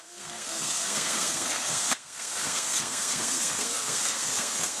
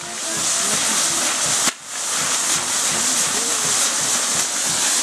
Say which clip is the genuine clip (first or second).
second